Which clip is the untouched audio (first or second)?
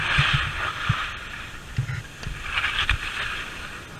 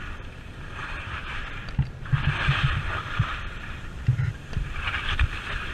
first